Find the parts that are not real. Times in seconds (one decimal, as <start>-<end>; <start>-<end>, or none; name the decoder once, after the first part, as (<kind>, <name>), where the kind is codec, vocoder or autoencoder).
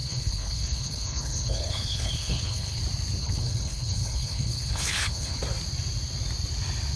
0.0-2.8 (codec, HILCodec); 3.2-5.4